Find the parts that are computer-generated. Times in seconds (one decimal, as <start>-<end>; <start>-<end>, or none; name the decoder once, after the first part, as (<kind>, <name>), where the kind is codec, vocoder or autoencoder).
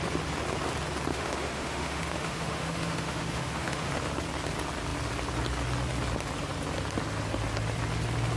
1.1-3.9 (autoencoder, DAC-VAE)